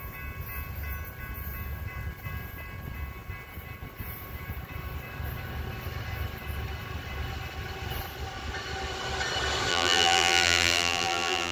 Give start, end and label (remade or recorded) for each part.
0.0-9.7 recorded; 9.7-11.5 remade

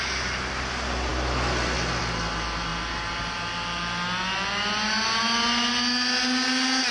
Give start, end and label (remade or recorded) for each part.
0.0-6.9 recorded

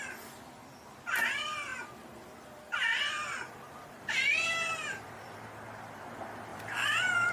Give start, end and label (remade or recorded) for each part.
0.0-1.7 recorded; 1.7-5.4 remade; 5.4-6.5 recorded; 6.5-7.3 remade

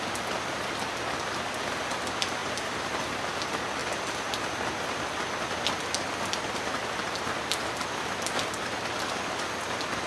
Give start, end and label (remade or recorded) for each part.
0.0-2.4 recorded; 2.4-3.2 remade; 3.2-10.1 recorded